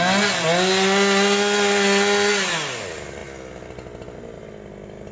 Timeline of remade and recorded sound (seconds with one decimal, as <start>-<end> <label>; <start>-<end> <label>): 0.0-5.1 recorded